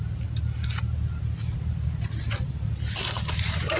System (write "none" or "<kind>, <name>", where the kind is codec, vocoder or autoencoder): none